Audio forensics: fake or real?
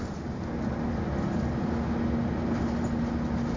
real